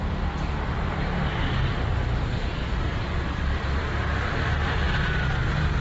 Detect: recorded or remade remade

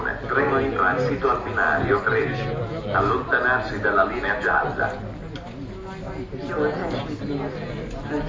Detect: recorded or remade recorded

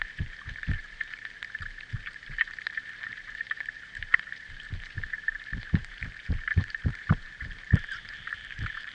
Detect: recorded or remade remade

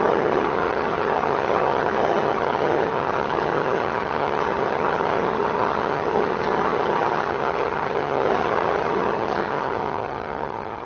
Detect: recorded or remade remade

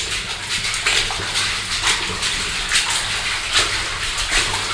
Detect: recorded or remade recorded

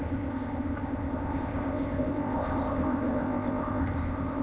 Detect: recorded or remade remade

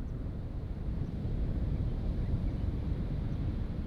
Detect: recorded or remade remade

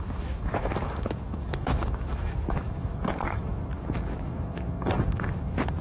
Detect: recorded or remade remade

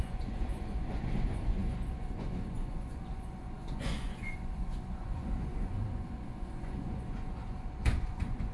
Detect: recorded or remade remade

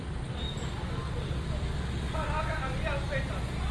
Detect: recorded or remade recorded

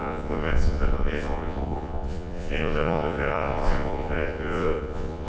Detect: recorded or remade remade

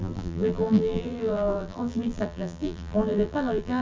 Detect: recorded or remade remade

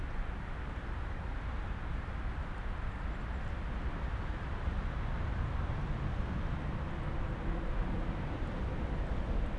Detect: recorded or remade recorded